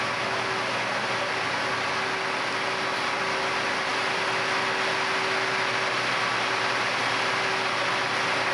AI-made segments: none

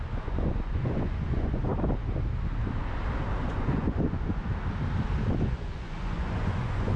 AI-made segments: 0.0-1.7; 3.4-4.4; 5.3-7.0

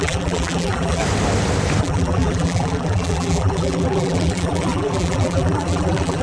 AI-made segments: 0.0-1.0; 1.8-6.2

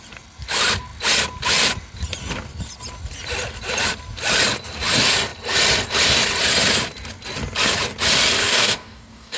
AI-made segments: 8.4-9.4

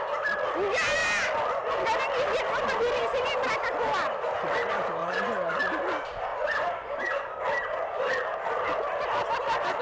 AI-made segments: 5.0-5.6; 6.3-7.3

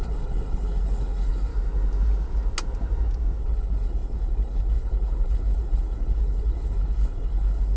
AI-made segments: 0.0-1.5; 3.4-7.8